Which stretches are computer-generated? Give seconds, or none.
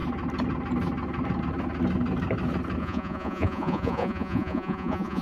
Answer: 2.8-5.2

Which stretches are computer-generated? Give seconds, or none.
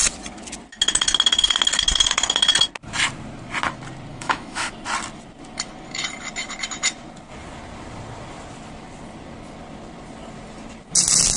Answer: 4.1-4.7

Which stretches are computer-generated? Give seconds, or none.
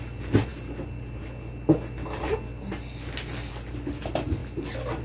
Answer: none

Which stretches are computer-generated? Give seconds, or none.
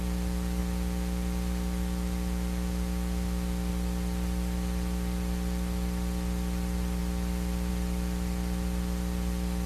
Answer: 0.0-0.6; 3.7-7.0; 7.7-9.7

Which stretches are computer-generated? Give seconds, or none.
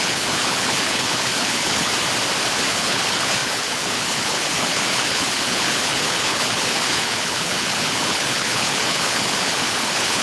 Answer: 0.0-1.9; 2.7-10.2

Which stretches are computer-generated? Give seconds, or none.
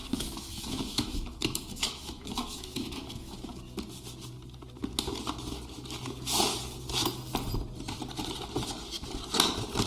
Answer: 0.0-3.6